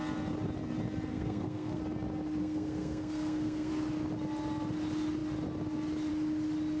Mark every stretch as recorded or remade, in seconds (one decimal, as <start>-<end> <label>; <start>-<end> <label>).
0.0-1.1 recorded; 1.1-1.8 remade; 1.8-2.4 recorded; 2.4-3.7 remade; 3.7-6.8 recorded